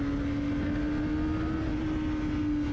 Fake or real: real